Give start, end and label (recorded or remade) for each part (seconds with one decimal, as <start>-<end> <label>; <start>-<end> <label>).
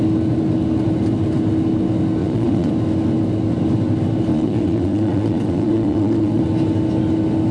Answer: 0.0-2.2 recorded; 2.2-2.7 remade; 2.7-4.3 recorded; 4.3-6.4 remade; 6.4-7.5 recorded